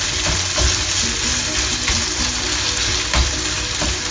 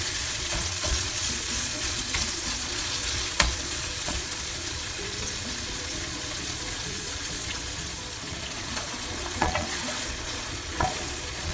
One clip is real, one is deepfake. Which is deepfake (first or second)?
second